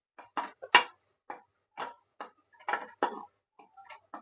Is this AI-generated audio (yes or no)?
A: no